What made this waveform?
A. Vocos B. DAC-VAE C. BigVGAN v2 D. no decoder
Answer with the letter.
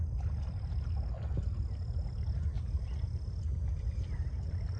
D